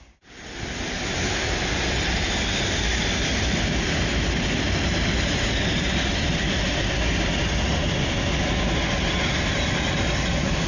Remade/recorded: recorded